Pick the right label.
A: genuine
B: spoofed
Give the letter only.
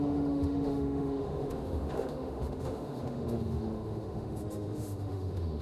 B